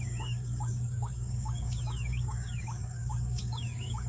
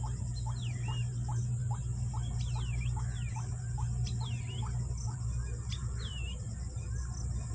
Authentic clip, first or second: second